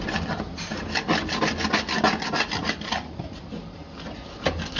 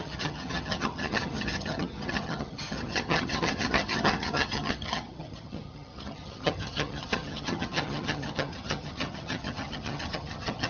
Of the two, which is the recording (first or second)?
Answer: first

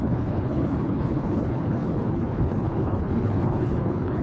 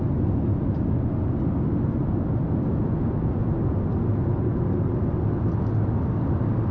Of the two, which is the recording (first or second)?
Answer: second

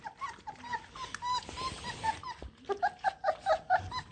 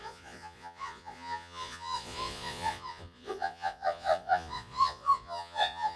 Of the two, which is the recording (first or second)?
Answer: first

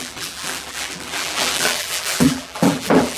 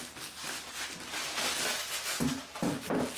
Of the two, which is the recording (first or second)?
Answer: second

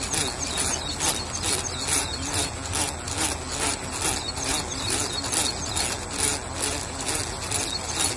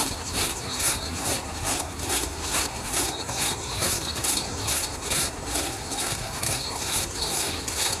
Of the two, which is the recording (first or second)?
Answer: first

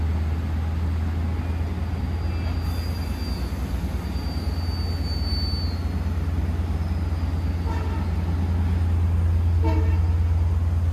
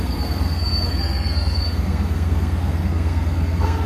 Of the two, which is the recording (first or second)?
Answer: first